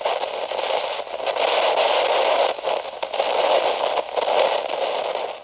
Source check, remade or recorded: recorded